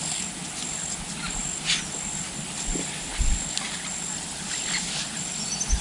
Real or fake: real